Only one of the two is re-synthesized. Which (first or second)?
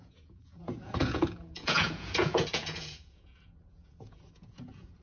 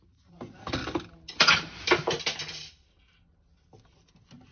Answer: first